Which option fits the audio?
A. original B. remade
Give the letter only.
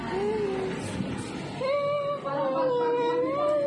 A